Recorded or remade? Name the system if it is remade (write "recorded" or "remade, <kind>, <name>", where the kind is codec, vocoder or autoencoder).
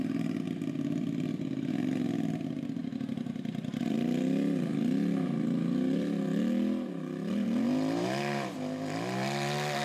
recorded